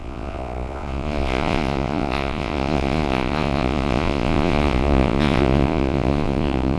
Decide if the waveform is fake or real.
fake